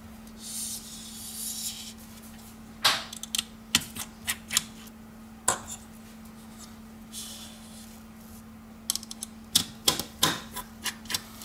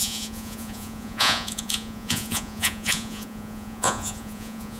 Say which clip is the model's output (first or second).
second